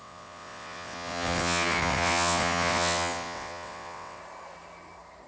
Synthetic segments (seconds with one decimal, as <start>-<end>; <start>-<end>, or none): 0.0-4.2